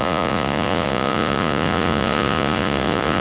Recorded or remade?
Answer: remade